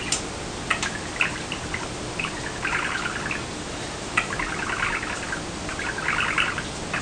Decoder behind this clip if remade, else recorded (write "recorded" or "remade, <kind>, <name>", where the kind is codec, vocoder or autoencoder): recorded